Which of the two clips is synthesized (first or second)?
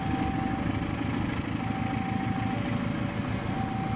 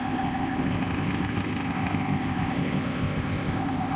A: second